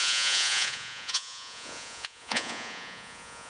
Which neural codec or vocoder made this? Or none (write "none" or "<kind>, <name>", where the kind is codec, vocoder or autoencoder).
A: vocoder, Vocos